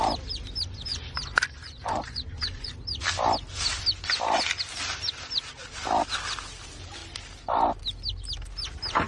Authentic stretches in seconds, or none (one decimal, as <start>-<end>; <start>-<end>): 0.0-0.9; 2.7-9.1